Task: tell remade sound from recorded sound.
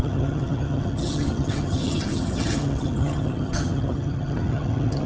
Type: remade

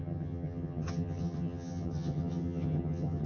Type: remade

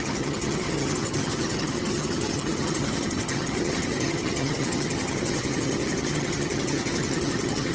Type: remade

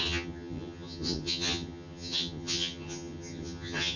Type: remade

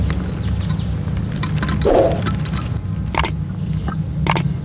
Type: recorded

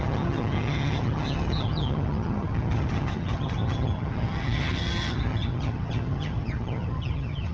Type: remade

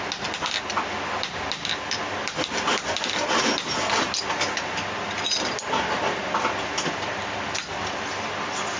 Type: recorded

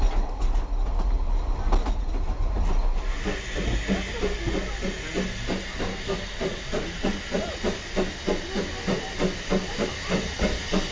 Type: recorded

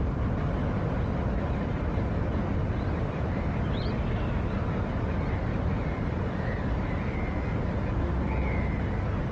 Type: recorded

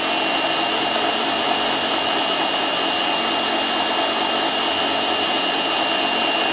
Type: recorded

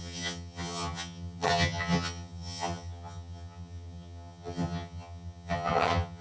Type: remade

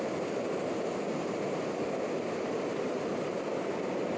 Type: recorded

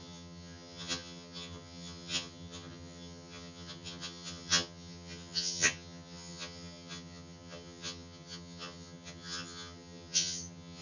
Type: remade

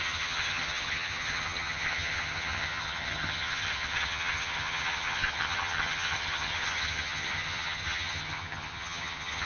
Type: remade